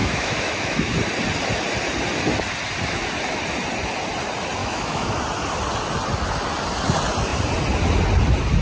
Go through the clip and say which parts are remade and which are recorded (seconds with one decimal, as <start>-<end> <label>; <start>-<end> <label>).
0.0-0.9 remade; 0.9-4.6 recorded; 4.6-5.1 remade; 5.1-8.6 recorded